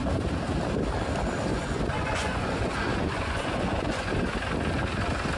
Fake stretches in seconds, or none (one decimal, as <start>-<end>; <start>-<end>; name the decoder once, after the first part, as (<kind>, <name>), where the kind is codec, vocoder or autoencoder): 1.5-4.1 (vocoder, Vocos)